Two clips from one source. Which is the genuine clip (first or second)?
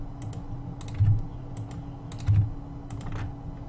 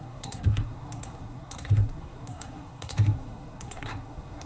first